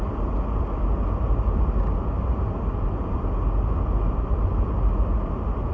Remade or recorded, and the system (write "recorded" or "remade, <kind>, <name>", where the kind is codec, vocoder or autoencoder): recorded